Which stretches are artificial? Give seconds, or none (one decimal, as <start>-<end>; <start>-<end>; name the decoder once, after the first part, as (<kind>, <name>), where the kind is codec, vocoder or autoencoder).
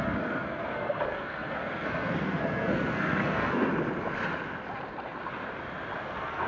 0.0-3.7 (codec, SNAC); 6.0-6.5